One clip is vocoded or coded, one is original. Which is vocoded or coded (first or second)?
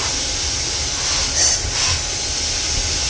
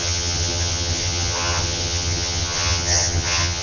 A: second